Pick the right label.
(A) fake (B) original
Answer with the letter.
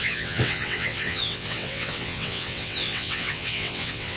A